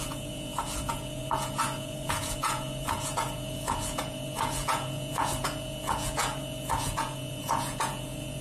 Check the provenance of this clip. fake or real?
fake